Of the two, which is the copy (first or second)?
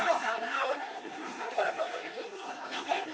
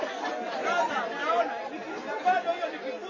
first